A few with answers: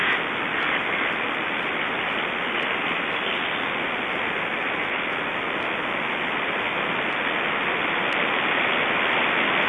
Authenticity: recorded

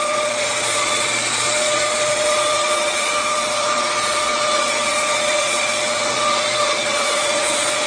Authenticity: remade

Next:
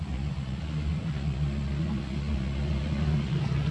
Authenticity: remade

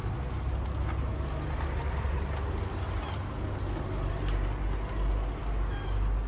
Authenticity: recorded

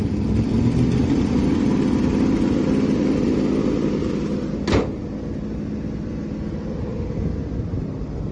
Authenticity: recorded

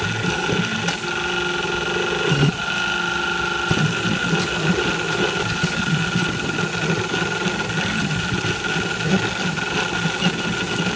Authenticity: recorded